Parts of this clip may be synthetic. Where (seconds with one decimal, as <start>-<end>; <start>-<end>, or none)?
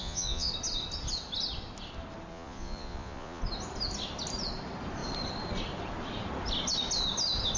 0.0-0.5; 2.3-3.4